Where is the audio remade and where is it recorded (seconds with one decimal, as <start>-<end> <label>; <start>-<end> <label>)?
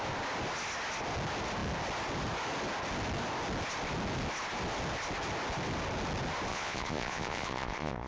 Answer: 0.0-6.5 recorded; 6.5-8.1 remade